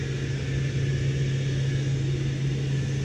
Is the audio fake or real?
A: real